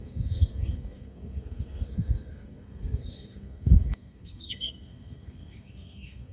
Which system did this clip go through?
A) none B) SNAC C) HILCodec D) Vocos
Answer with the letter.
B